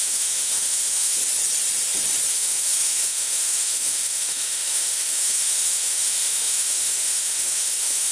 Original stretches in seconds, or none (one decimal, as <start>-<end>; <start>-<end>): 1.2-2.3